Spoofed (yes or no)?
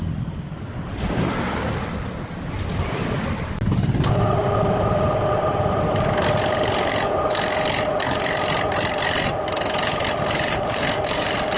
no